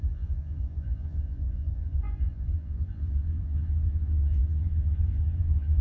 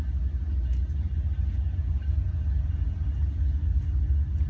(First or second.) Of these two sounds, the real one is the second